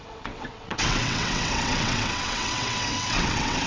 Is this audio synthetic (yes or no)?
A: yes